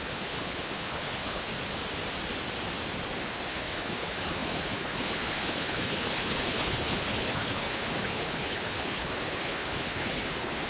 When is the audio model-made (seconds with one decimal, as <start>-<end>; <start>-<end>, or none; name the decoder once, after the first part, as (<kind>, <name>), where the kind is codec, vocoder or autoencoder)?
0.0-1.5 (codec, HILCodec); 3.2-10.7